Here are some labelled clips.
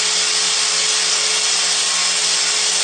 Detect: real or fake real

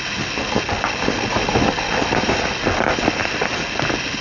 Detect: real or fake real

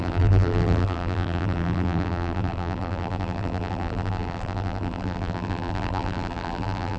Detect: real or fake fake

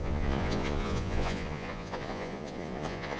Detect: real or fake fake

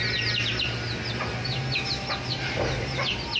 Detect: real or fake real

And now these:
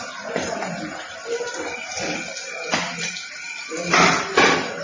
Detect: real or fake real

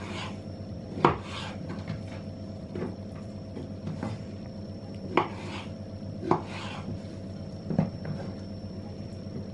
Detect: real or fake fake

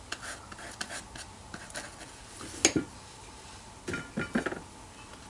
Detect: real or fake real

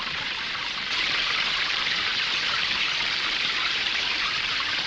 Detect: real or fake fake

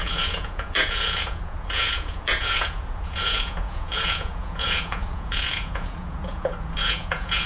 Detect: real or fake fake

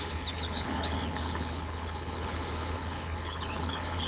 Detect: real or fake fake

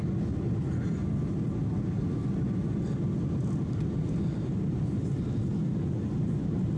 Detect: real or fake real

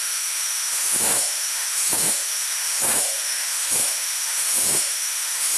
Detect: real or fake fake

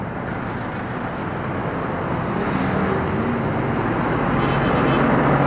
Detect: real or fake real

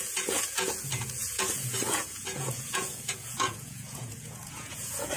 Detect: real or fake fake